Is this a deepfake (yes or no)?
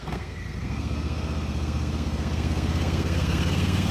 yes